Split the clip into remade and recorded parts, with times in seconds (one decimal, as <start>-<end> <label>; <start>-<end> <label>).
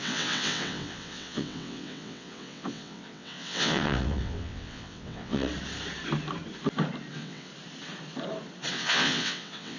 0.0-5.5 remade; 5.5-7.1 recorded; 7.1-7.5 remade; 7.5-8.7 recorded; 8.7-9.8 remade